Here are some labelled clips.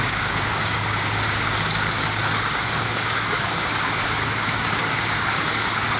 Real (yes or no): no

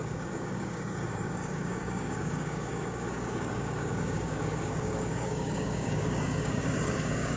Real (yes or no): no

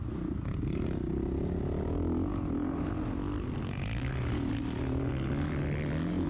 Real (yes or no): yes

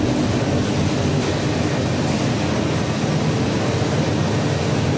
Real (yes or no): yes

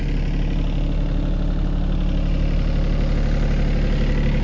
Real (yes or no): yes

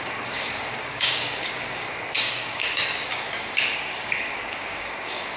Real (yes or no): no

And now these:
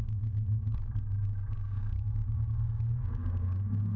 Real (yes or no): no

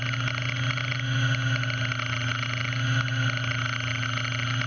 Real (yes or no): yes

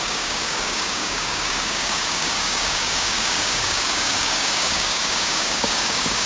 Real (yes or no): no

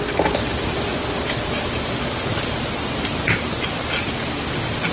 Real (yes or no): yes